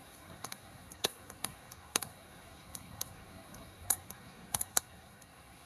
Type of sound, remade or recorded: remade